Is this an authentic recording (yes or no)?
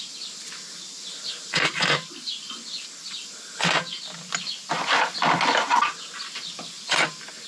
yes